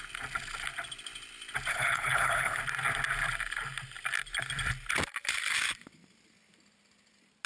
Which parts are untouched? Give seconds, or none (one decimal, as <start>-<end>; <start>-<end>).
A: 0.0-1.7; 2.6-7.5

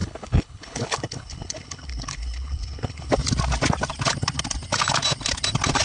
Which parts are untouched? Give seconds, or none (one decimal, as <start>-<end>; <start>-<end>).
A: 3.1-5.8

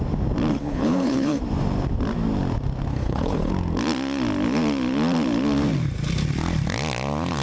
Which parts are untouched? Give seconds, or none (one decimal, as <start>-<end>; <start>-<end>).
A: 0.0-0.5; 1.4-2.9; 3.5-7.4

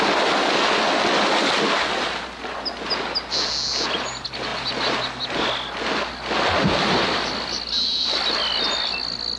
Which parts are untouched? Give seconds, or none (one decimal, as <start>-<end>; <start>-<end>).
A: 0.0-9.4